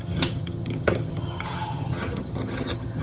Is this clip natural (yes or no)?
no